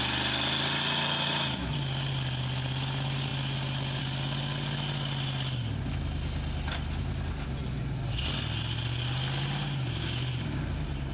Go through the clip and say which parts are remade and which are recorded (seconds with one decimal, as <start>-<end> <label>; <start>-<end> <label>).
0.0-11.1 recorded